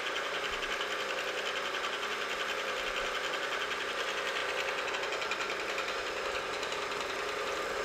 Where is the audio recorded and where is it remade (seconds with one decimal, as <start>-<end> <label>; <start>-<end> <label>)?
0.0-7.8 recorded